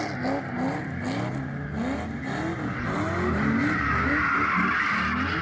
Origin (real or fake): real